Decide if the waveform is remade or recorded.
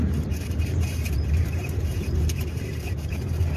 remade